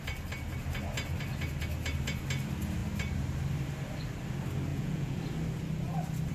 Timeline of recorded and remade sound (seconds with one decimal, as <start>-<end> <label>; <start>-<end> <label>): 0.0-4.7 recorded; 4.7-5.2 remade; 5.2-6.3 recorded